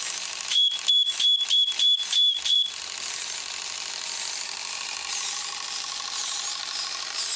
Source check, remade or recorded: recorded